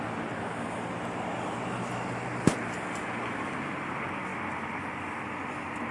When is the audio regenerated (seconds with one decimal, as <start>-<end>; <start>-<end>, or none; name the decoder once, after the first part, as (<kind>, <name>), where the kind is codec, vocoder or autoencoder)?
none